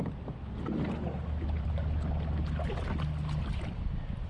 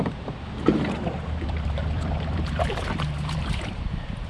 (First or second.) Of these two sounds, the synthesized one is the second